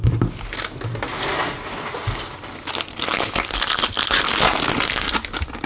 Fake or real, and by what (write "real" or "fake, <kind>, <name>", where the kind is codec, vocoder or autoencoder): real